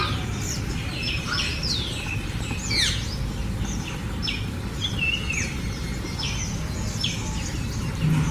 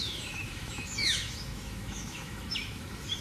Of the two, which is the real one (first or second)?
first